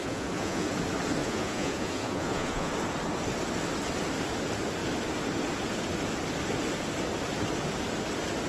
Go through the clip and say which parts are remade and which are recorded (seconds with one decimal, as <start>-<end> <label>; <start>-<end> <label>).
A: 0.0-0.7 remade; 0.7-1.2 recorded; 1.2-2.7 remade; 2.7-8.5 recorded

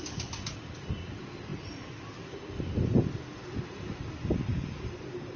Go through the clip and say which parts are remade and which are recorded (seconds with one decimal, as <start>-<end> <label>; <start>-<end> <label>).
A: 0.0-5.4 recorded

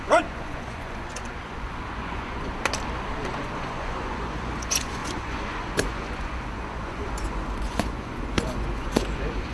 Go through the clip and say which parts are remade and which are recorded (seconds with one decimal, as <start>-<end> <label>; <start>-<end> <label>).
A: 0.0-2.5 remade; 2.5-3.4 recorded; 3.4-9.5 remade

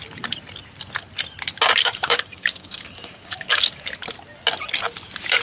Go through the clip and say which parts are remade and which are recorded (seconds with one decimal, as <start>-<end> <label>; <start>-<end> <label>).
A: 0.0-1.8 recorded; 1.8-3.7 remade; 3.7-5.4 recorded